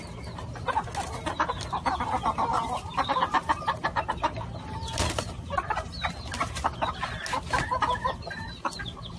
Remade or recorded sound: recorded